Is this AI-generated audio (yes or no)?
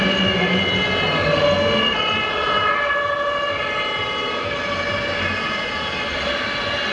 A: no